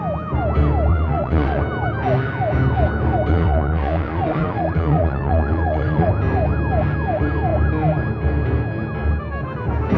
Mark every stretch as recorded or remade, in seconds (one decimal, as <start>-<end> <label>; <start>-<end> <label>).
0.0-0.9 recorded; 0.9-1.6 remade; 1.6-3.3 recorded; 3.3-6.1 remade; 6.1-10.0 recorded